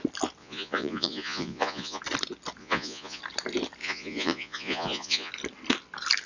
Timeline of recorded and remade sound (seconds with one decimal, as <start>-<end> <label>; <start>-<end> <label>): 0.0-0.4 recorded; 0.4-2.0 remade; 2.0-2.6 recorded; 2.6-3.2 remade; 3.2-3.8 recorded; 3.8-5.3 remade; 5.3-6.3 recorded